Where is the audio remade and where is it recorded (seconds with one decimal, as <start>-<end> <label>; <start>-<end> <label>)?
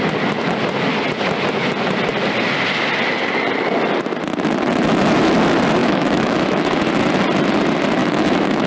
0.0-5.8 recorded; 5.8-6.8 remade; 6.8-8.0 recorded; 8.0-8.7 remade